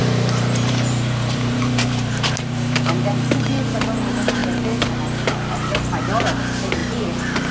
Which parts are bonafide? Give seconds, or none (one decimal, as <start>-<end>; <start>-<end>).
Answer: 3.4-7.5